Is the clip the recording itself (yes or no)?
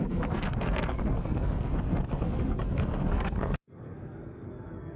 no